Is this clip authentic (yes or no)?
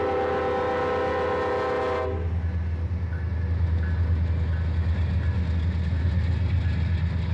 yes